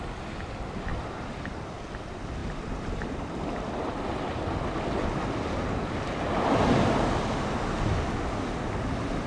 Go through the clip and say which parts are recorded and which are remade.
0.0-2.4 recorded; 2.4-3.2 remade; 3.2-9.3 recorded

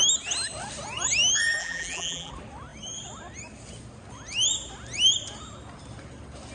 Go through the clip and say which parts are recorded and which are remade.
0.0-1.6 recorded; 1.6-2.3 remade; 2.3-6.5 recorded

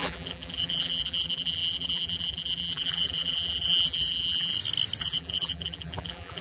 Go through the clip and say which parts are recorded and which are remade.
0.0-4.5 remade; 4.5-5.0 recorded; 5.0-6.4 remade